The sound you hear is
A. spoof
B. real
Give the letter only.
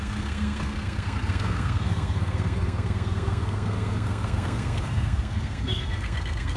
A